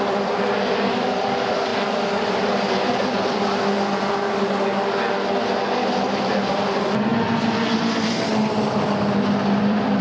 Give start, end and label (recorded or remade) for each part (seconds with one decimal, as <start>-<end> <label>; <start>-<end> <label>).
0.0-1.7 remade; 1.7-6.5 recorded; 6.5-7.1 remade; 7.1-7.7 recorded; 7.7-8.3 remade; 8.3-9.6 recorded; 9.6-10.0 remade